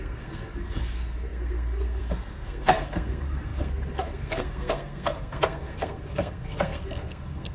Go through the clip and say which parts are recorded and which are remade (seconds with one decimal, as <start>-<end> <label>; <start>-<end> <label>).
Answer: 0.0-7.5 remade